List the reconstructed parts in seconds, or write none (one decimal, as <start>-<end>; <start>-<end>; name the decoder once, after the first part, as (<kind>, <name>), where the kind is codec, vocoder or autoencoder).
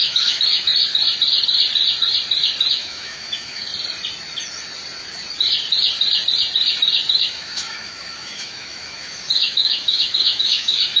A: 0.0-0.7 (autoencoder, DAC-VAE); 2.7-3.7; 7.1-11.0